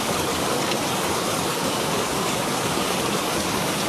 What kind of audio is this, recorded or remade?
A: remade